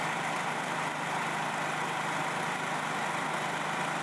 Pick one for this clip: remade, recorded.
recorded